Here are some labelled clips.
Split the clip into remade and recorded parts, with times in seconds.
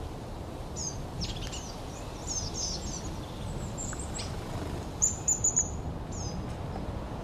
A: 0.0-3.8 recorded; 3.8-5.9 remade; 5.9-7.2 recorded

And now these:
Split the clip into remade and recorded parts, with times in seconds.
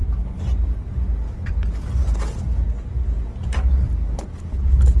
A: 0.0-5.0 recorded